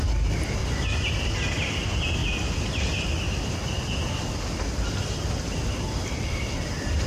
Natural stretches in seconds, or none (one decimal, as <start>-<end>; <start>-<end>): 0.0-7.1